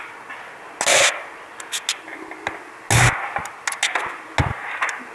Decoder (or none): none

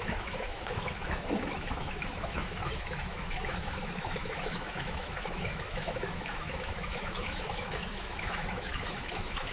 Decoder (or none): autoencoder, DAC-VAE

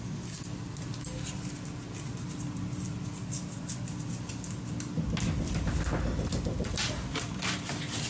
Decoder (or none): none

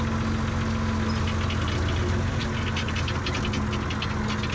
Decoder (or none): none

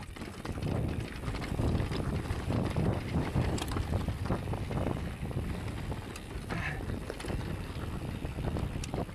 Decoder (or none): none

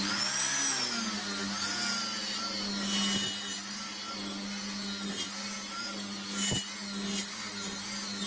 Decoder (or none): none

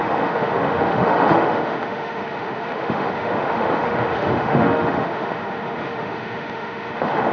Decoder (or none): autoencoder, DAC-VAE